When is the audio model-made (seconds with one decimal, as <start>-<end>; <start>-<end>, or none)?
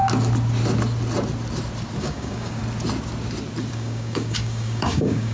2.0-2.6; 3.7-5.3